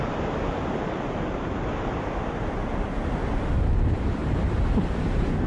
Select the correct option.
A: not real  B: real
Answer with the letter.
B